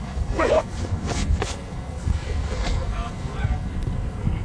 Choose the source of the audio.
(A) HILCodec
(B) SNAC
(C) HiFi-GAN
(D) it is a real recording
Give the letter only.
B